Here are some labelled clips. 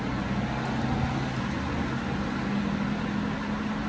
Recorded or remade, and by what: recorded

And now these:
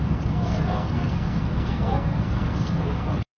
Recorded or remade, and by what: remade, codec, SNAC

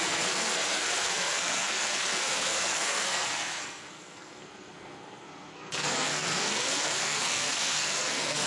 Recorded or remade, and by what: remade, codec, SNAC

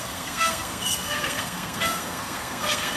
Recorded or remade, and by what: remade, codec, SNAC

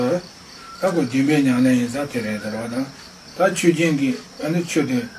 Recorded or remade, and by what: recorded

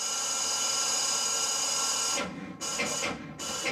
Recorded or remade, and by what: recorded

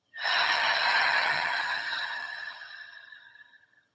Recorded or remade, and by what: remade, vocoder, HiFi-GAN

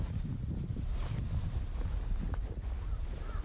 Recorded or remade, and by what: recorded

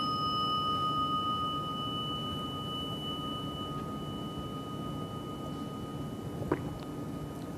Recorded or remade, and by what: recorded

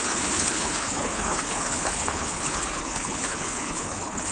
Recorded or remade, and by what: remade, codec, HILCodec